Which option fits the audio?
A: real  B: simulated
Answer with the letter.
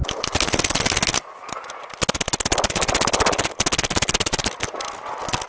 A